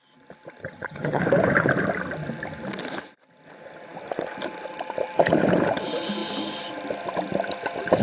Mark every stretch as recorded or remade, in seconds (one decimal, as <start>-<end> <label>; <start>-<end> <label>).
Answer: 0.0-0.6 recorded; 0.6-1.2 remade; 1.2-8.0 recorded